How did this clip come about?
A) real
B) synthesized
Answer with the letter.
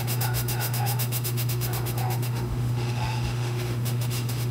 B